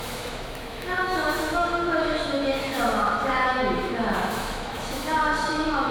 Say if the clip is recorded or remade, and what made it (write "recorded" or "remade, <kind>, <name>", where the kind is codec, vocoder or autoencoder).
remade, autoencoder, DAC-VAE